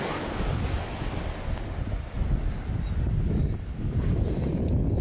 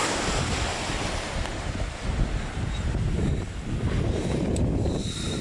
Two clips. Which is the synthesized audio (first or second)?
second